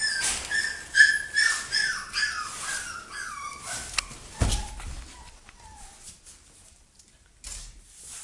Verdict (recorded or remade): remade